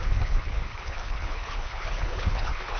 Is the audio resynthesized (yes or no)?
yes